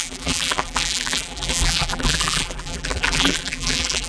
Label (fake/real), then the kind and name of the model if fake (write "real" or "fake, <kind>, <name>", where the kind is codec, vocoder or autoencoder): fake, vocoder, BigVGAN v2